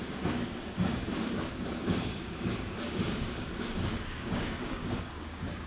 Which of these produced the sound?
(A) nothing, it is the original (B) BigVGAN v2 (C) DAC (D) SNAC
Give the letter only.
C